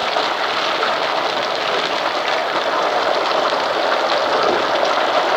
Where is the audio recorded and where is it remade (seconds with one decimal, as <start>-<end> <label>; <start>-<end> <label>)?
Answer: 0.0-5.4 recorded